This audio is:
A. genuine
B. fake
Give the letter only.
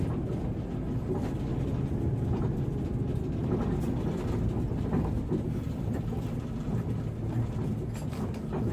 A